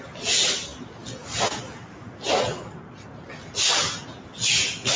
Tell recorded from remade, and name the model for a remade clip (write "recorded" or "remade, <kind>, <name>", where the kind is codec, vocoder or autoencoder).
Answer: recorded